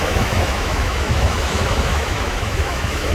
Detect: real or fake fake